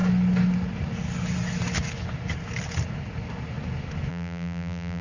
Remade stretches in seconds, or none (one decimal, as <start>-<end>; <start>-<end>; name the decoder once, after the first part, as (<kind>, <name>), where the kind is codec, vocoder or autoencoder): 4.1-5.0 (vocoder, BigVGAN v2)

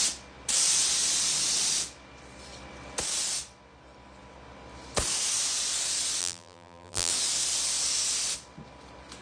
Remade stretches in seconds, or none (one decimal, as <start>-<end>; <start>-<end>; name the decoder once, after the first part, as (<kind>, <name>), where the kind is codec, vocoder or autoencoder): 6.2-7.1 (vocoder, BigVGAN v2)

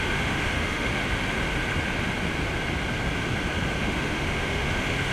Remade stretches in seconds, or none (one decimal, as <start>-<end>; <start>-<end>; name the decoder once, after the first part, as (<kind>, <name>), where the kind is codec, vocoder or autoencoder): 0.0-1.0 (autoencoder, DAC-VAE); 3.8-5.1